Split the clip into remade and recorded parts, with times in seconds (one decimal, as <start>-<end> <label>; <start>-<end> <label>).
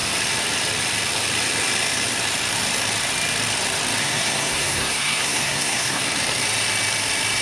0.0-4.0 recorded; 4.0-6.0 remade; 6.0-7.4 recorded